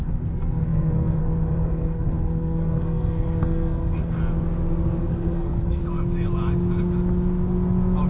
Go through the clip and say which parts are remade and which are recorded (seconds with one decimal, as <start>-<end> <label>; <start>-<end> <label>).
0.0-4.2 remade; 4.2-5.0 recorded; 5.0-5.8 remade; 5.8-8.1 recorded